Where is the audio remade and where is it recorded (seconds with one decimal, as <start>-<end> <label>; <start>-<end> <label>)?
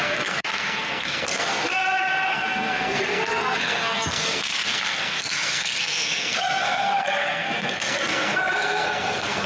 0.0-1.8 remade; 1.8-2.3 recorded; 2.3-9.5 remade